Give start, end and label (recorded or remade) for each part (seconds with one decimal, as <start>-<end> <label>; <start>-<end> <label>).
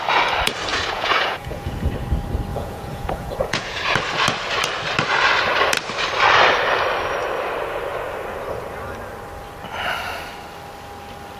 0.0-0.7 recorded; 0.7-1.9 remade; 1.9-2.5 recorded; 2.5-3.8 remade; 3.8-11.4 recorded